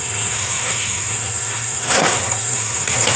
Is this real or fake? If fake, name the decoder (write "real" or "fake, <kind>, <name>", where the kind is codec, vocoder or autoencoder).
fake, codec, SNAC